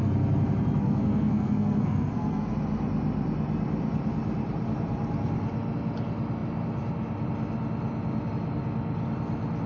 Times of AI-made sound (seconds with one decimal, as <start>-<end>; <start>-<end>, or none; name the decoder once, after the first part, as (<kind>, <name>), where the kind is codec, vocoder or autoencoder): 0.8-2.5 (codec, SNAC)